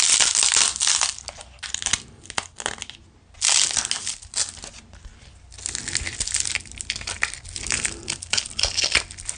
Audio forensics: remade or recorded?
recorded